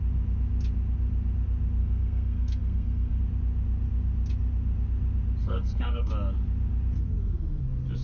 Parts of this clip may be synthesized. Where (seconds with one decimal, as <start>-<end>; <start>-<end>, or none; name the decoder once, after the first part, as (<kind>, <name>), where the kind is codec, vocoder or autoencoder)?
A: 1.8-3.2 (codec, SNAC); 5.4-6.1